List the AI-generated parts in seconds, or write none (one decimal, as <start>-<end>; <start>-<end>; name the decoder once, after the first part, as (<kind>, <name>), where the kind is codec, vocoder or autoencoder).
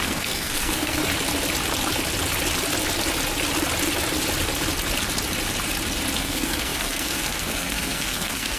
0.0-1.0 (codec, SNAC); 6.2-8.6